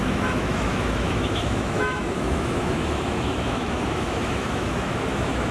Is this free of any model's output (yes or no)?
no